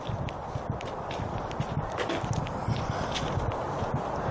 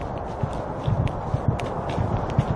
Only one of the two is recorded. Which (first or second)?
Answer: second